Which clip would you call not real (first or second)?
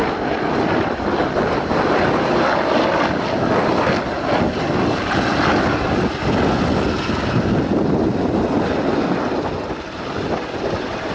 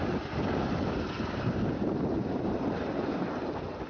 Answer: second